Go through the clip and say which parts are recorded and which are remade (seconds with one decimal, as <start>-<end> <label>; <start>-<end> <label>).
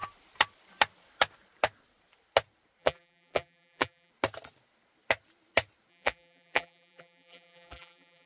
0.0-2.8 recorded; 2.8-4.1 remade; 4.1-5.9 recorded; 5.9-8.3 remade